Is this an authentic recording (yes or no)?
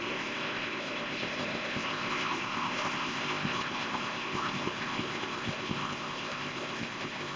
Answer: no